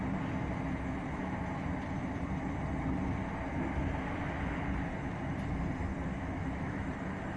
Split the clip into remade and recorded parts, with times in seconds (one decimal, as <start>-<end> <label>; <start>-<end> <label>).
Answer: 0.0-6.1 recorded; 6.1-6.9 remade; 6.9-7.4 recorded